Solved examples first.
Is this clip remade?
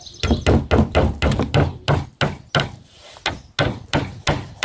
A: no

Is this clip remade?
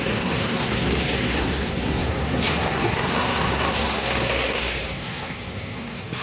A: yes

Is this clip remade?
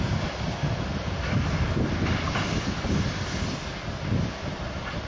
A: no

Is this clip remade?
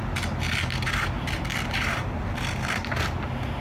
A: no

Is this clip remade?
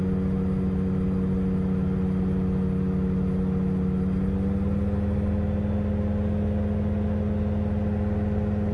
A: no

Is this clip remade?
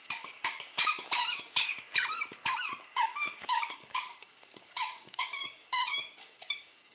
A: yes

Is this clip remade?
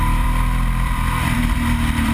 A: yes